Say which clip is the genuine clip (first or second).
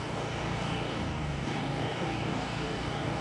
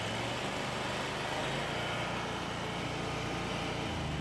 second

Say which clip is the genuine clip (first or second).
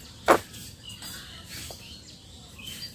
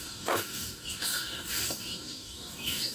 first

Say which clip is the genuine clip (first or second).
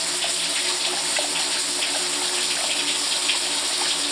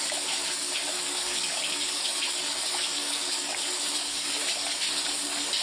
first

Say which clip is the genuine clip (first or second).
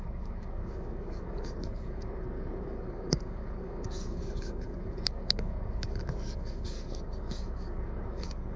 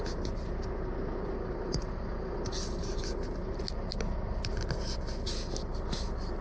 second